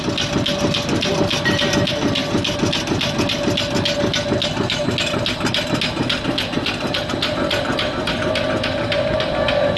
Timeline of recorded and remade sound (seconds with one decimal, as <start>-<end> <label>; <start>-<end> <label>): 0.0-9.8 recorded